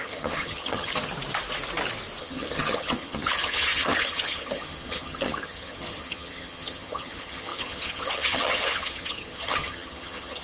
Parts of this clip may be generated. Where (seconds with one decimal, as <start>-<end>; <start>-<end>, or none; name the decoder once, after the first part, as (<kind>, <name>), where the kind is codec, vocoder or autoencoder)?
0.0-0.9 (vocoder, HiFi-GAN); 2.2-10.4